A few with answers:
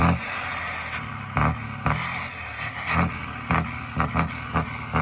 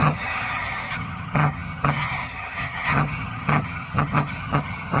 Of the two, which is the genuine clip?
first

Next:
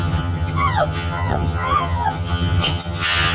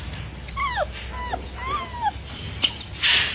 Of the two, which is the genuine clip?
second